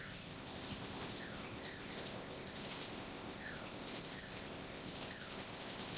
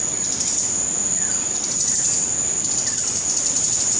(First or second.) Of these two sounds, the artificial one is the first